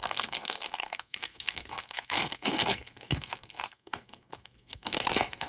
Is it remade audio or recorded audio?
remade